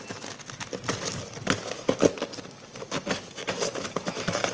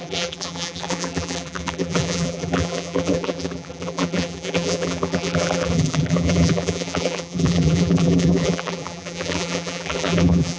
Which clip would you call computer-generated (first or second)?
second